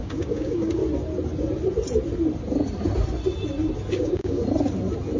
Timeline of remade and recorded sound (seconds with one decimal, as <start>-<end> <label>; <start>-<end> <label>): 0.0-0.8 remade; 0.8-3.9 recorded; 3.9-4.4 remade; 4.4-5.2 recorded